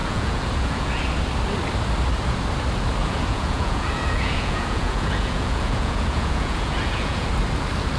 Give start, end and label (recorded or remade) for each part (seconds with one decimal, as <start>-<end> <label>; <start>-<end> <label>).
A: 0.0-1.0 remade; 1.0-3.0 recorded; 3.0-7.3 remade; 7.3-8.0 recorded